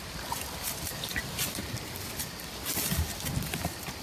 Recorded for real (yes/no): yes